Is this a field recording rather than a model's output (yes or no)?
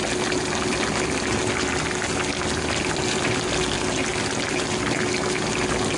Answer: yes